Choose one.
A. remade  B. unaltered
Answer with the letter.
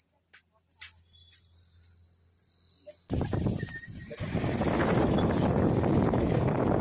B